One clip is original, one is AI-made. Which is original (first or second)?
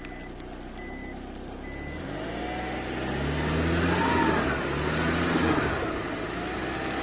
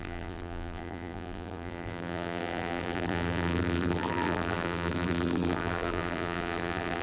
first